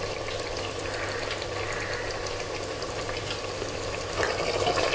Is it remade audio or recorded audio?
recorded